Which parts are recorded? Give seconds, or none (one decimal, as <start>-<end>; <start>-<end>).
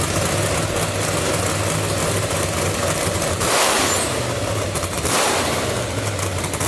0.0-2.0; 6.0-6.7